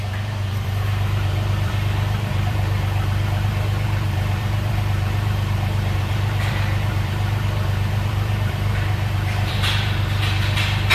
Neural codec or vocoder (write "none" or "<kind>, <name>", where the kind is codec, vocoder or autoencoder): vocoder, BigVGAN v2